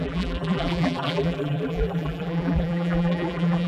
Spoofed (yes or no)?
yes